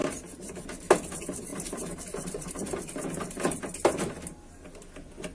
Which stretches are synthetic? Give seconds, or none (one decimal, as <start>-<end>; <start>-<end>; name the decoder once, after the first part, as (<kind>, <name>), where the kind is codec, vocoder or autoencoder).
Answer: 1.5-2.5 (vocoder, BigVGAN v2)